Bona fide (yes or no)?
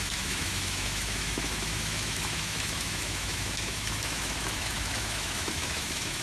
no